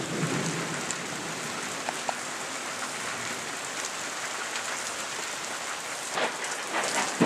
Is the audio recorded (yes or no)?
yes